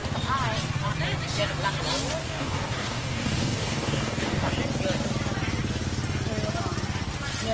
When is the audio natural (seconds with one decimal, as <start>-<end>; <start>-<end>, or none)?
0.0-2.2; 4.6-7.5